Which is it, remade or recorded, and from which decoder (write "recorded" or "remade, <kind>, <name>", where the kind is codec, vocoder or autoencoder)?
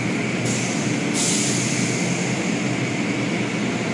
recorded